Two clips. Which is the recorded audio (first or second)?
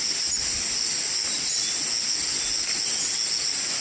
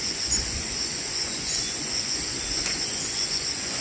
first